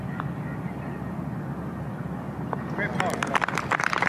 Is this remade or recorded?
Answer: recorded